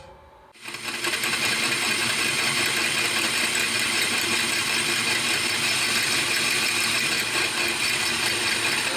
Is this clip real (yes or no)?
yes